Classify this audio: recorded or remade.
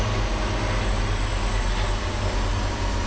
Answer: recorded